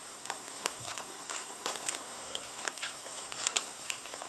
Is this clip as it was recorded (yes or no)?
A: no